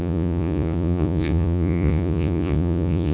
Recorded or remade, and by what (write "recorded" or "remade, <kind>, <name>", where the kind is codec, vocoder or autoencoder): remade, vocoder, Vocos